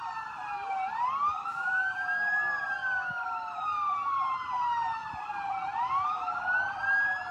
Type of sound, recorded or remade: recorded